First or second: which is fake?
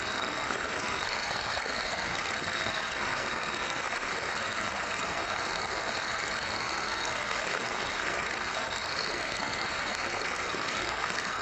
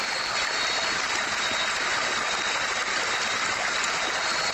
first